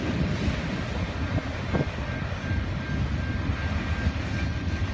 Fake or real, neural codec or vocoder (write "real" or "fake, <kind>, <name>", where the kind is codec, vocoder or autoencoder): real